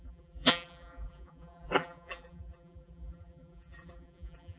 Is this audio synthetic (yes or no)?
yes